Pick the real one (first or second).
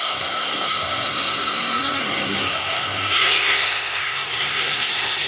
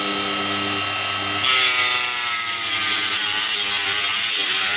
second